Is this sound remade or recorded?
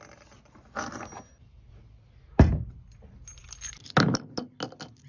recorded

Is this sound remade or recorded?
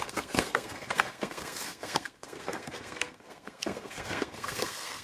remade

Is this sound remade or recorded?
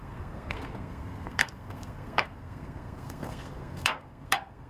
remade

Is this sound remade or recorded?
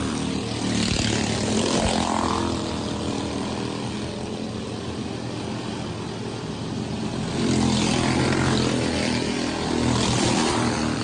recorded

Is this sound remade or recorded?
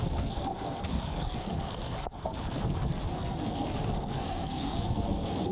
remade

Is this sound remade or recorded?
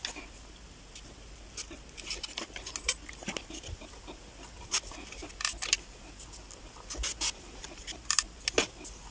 recorded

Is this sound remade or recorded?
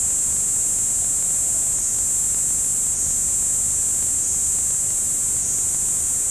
recorded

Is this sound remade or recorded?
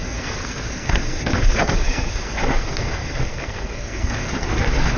remade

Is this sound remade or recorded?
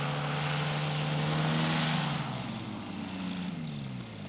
recorded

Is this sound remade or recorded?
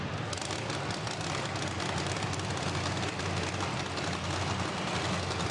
recorded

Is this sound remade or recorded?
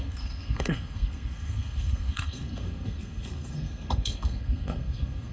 remade